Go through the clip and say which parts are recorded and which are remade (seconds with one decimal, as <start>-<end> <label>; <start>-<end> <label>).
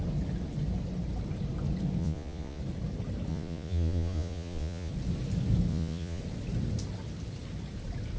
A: 0.0-2.0 recorded; 2.0-2.6 remade; 2.6-3.3 recorded; 3.3-4.9 remade; 4.9-5.7 recorded; 5.7-6.2 remade; 6.2-8.2 recorded